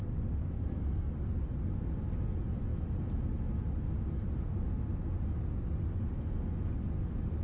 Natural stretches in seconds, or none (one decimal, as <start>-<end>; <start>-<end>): 0.0-0.4; 1.1-7.4